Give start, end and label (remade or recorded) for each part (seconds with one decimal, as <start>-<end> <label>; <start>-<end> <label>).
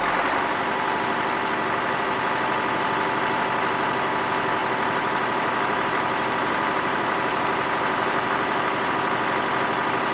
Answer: 0.0-4.6 recorded; 4.6-8.9 remade; 8.9-10.1 recorded